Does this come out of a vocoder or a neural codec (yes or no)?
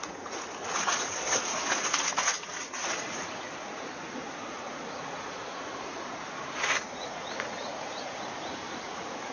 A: yes